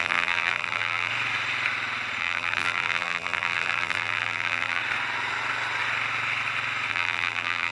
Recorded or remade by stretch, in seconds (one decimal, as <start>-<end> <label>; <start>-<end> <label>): 0.0-1.1 remade; 1.1-2.2 recorded; 2.2-4.8 remade; 4.8-6.9 recorded; 6.9-7.7 remade